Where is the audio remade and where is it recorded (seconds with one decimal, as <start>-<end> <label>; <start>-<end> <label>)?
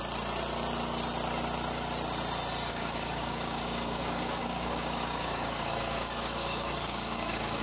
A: 0.0-2.7 recorded; 2.7-7.6 remade